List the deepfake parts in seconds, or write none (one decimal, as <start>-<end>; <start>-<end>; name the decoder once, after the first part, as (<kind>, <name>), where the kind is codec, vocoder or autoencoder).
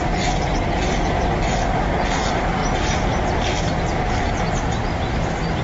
none